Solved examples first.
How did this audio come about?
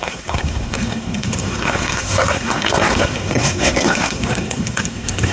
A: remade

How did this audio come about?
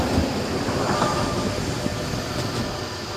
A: recorded